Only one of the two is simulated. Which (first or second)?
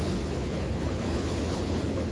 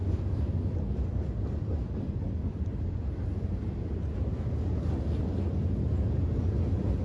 first